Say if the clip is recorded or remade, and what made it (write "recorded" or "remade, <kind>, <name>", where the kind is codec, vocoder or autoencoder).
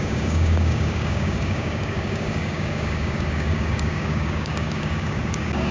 remade, codec, DAC